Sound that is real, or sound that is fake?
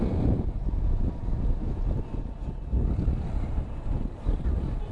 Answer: real